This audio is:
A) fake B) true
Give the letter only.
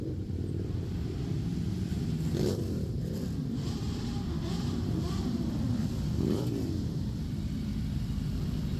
A